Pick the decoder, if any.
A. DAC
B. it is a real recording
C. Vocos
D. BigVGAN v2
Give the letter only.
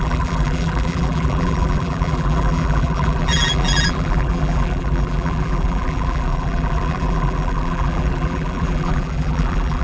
D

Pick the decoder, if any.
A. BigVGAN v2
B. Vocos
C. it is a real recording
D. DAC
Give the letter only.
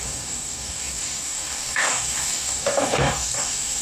D